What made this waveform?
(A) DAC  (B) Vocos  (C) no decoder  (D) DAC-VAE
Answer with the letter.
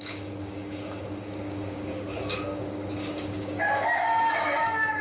A